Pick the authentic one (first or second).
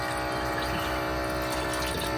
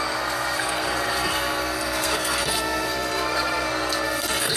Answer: first